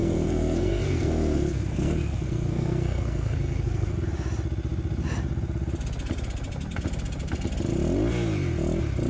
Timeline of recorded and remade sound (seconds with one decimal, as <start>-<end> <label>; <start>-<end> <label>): 0.0-3.9 remade; 3.9-9.1 recorded